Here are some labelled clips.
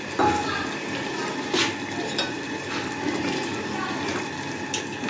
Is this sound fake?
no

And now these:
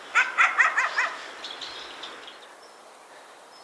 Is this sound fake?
no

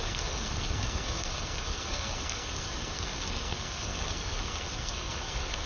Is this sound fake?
yes